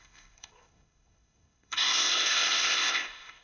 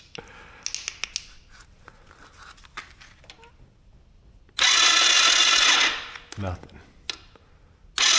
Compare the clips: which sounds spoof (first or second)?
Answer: first